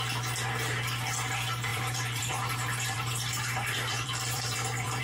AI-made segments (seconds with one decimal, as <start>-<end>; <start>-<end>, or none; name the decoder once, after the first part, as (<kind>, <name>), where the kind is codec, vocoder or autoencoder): 1.7-5.0 (vocoder, BigVGAN v2)